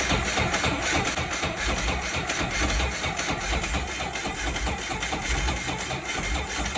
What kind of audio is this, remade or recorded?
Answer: recorded